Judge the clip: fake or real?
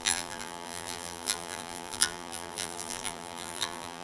fake